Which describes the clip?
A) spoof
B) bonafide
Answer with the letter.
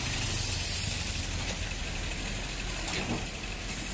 B